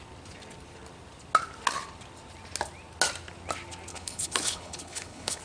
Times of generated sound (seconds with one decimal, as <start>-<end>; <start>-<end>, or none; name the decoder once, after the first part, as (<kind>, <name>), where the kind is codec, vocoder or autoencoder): 3.9-5.4 (codec, HILCodec)

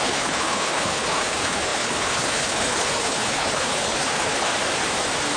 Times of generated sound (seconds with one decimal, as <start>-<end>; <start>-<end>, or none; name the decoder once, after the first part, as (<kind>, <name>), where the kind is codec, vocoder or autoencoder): 0.0-4.5 (codec, HILCodec)

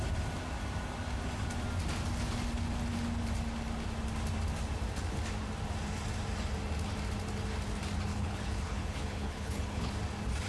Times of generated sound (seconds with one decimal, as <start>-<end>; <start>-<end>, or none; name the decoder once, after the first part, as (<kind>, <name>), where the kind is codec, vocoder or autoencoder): 8.1-9.9 (codec, HILCodec)

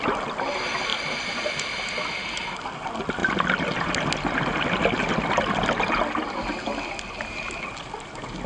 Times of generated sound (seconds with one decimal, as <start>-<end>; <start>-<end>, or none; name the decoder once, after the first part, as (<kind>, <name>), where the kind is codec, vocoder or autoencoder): none

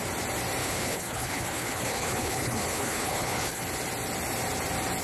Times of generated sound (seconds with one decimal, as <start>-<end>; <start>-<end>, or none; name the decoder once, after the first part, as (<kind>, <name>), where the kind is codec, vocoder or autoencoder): 0.6-3.6 (codec, HILCodec)

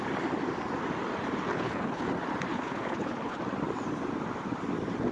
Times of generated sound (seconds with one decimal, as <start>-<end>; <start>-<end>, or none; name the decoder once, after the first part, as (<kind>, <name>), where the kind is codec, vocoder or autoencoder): 1.5-2.1 (codec, HILCodec); 2.5-3.4

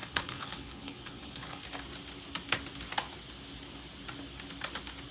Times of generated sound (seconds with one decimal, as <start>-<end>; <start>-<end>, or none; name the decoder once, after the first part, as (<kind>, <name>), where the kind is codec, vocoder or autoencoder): 0.0-1.6 (codec, HILCodec)